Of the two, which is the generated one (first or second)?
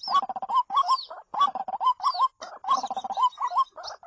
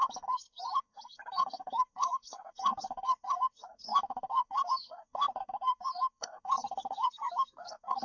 second